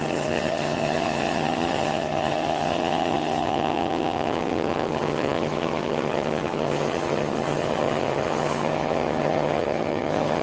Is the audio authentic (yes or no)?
no